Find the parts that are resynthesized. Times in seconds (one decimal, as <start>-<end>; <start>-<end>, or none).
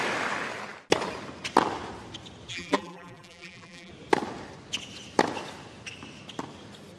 2.5-3.9